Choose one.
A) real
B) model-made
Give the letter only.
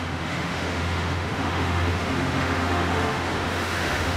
B